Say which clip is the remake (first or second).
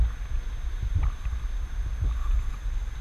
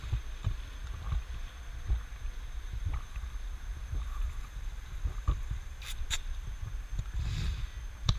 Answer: second